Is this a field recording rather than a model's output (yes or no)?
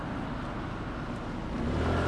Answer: yes